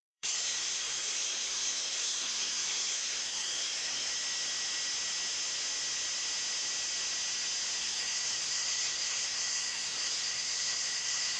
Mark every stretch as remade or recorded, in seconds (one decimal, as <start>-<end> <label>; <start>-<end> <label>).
0.0-4.1 remade; 4.1-7.8 recorded; 7.8-11.4 remade